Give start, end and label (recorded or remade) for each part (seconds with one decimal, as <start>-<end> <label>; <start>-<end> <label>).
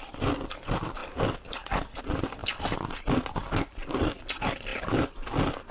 0.0-5.7 recorded